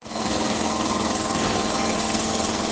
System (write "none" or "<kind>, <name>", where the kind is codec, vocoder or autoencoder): codec, SNAC